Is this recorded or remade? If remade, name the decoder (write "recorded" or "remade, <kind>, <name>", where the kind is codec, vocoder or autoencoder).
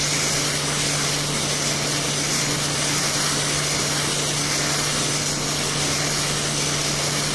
recorded